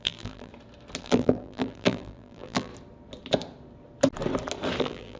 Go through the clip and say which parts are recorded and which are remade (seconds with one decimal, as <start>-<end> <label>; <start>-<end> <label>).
0.0-0.5 remade; 0.5-1.0 recorded; 1.0-2.7 remade; 2.7-4.8 recorded; 4.8-5.2 remade